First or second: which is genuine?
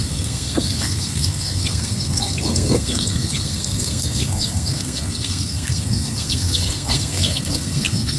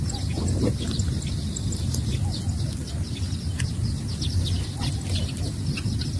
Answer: second